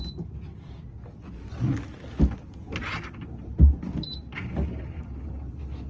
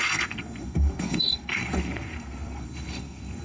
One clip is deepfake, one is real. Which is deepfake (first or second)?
second